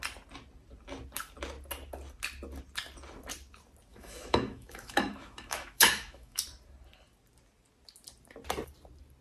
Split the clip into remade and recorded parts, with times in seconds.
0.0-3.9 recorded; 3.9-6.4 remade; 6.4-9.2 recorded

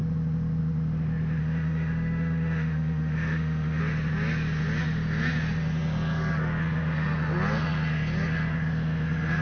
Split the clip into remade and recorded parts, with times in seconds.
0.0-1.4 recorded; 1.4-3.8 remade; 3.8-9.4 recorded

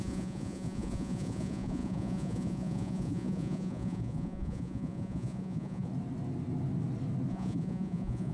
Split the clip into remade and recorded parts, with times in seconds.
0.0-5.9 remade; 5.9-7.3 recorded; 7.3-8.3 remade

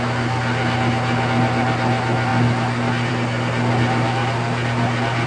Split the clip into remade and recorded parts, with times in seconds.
0.0-5.3 recorded